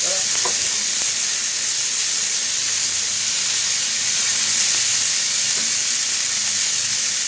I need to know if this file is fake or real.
real